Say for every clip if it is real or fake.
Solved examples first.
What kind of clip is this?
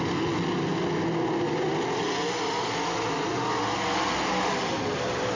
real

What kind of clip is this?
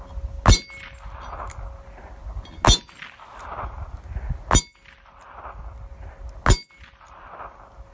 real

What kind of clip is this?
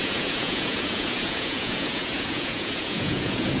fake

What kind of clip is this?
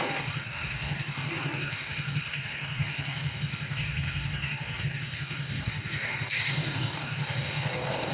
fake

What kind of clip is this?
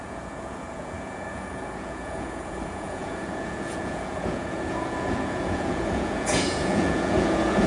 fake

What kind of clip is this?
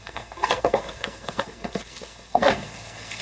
fake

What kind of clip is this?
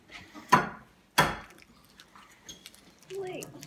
real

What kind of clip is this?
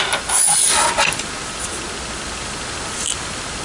real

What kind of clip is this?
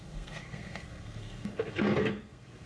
fake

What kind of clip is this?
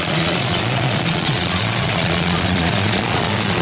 fake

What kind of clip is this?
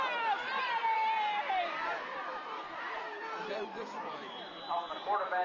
fake